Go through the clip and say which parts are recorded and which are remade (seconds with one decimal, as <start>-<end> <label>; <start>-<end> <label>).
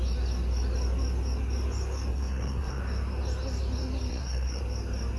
0.0-2.1 recorded; 2.1-2.8 remade; 2.8-4.1 recorded; 4.1-4.6 remade; 4.6-5.2 recorded